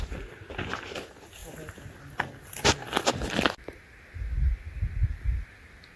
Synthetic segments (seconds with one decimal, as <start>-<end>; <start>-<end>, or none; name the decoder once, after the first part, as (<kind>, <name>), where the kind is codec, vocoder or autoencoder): 2.8-5.5 (vocoder, BigVGAN v2)